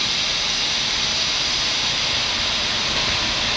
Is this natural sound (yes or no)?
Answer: yes